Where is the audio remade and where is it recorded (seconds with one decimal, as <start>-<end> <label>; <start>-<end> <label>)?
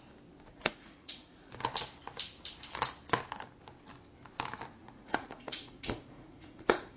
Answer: 0.0-0.5 recorded; 0.5-1.5 remade; 1.5-4.8 recorded; 4.8-7.0 remade